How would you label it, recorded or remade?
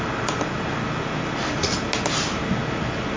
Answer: recorded